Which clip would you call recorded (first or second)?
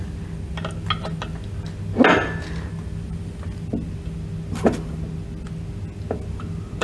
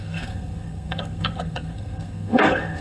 first